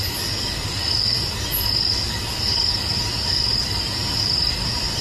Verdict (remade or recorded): remade